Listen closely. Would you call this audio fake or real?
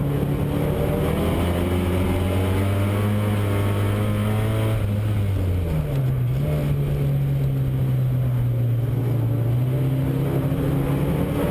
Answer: real